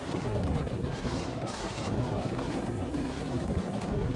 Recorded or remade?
remade